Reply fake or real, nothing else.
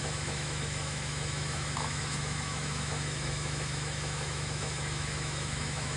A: fake